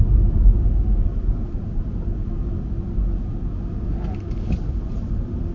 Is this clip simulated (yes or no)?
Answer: no